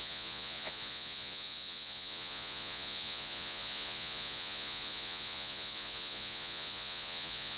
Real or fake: fake